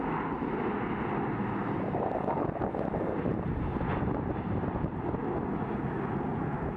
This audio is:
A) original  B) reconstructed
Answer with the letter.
A